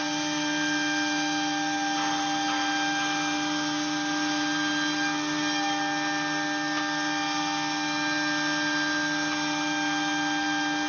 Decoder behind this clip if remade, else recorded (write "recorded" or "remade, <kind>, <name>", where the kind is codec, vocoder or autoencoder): recorded